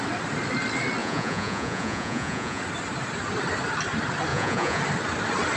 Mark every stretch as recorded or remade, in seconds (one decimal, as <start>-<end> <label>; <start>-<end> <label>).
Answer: 0.0-1.0 recorded; 1.0-2.6 remade; 2.6-4.3 recorded; 4.3-4.8 remade; 4.8-5.6 recorded